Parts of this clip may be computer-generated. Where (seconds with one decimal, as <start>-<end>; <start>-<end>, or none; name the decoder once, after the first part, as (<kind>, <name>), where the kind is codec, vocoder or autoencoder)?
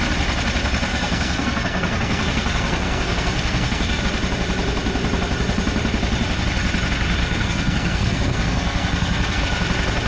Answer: 0.9-4.0 (codec, SNAC); 7.2-9.4